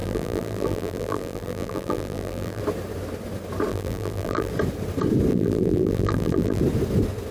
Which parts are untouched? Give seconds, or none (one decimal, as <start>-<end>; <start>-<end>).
2.6-3.7; 4.5-5.3; 6.6-7.3